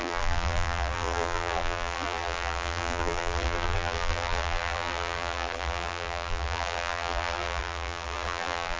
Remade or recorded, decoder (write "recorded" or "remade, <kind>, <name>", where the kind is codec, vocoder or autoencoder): remade, vocoder, BigVGAN v2